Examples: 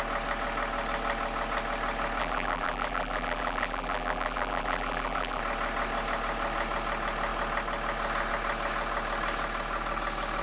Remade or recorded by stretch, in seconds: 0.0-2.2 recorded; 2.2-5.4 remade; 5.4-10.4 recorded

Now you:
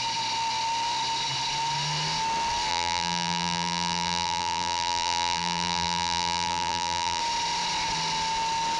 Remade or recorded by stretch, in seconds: 0.0-2.7 recorded; 2.7-7.2 remade; 7.2-8.8 recorded

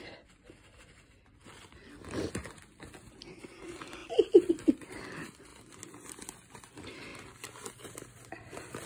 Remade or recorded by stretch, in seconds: 0.0-1.4 remade; 1.4-3.6 recorded; 3.6-4.0 remade; 4.0-4.5 recorded; 4.5-5.5 remade; 5.5-6.1 recorded; 6.1-7.1 remade; 7.1-7.7 recorded; 7.7-8.9 remade

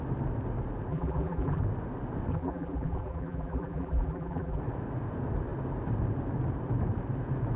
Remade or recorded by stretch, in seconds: 0.0-0.9 recorded; 0.9-1.6 remade; 1.6-2.3 recorded; 2.3-4.6 remade; 4.6-7.6 recorded

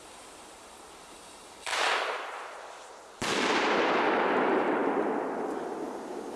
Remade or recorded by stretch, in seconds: 0.0-4.8 remade; 4.8-6.4 recorded

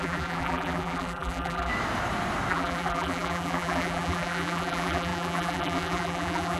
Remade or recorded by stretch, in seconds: 0.0-1.7 remade; 1.7-2.5 recorded; 2.5-6.6 remade

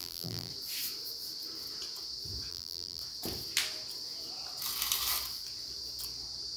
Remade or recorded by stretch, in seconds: 0.0-0.5 remade; 0.5-2.5 recorded; 2.5-3.0 remade; 3.0-6.6 recorded